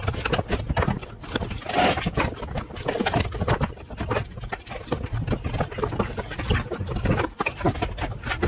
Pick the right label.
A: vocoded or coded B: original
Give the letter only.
B